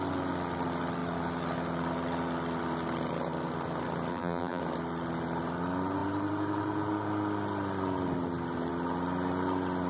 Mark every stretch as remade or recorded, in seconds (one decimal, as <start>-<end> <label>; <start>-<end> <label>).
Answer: 0.0-4.1 recorded; 4.1-4.6 remade; 4.6-9.9 recorded